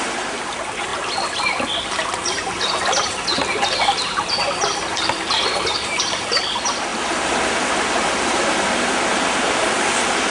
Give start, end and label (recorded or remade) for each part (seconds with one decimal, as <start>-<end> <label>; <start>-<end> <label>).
0.0-10.3 recorded